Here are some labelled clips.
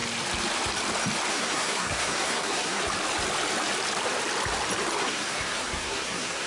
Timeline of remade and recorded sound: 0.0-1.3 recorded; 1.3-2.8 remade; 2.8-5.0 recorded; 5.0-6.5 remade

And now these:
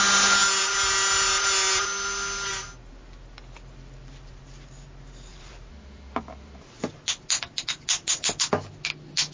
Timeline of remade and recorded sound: 0.0-5.3 recorded; 5.3-6.9 remade; 6.9-9.3 recorded

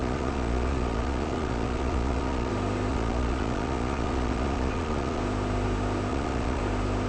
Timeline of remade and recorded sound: 0.0-2.5 remade; 2.5-2.9 recorded; 2.9-5.2 remade; 5.2-6.1 recorded; 6.1-6.6 remade; 6.6-7.1 recorded